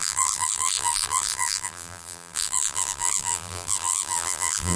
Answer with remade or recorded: remade